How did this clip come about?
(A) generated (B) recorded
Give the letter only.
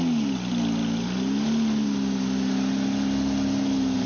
B